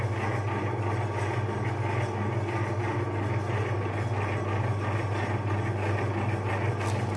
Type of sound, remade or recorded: recorded